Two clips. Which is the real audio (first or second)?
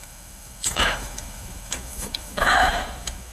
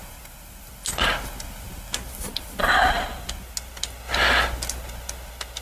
second